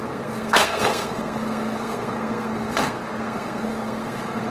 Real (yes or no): no